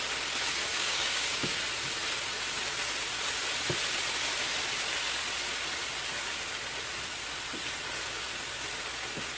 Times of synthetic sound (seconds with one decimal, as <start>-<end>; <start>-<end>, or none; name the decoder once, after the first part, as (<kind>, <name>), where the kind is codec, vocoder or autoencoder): 0.6-1.6 (codec, DAC)